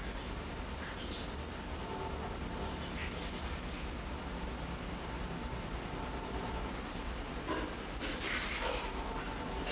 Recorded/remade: recorded